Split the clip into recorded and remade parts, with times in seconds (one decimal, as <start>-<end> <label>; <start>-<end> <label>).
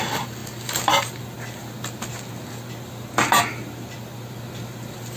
0.0-5.2 recorded